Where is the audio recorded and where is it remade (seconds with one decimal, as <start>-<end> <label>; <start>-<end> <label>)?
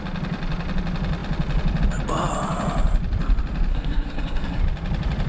0.0-3.7 recorded; 3.7-4.6 remade; 4.6-5.3 recorded